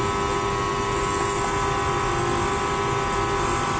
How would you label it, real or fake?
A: real